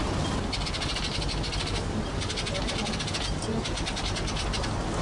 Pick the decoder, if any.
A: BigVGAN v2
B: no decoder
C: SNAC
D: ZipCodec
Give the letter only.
B